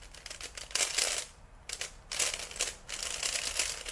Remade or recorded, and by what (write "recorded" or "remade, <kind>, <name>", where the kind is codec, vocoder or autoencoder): recorded